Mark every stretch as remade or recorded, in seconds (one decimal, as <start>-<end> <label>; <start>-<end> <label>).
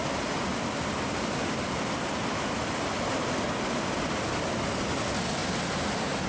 0.0-6.3 recorded